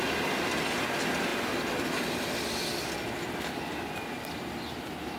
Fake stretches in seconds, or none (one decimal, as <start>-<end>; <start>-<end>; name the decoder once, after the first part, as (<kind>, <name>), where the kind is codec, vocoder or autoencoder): none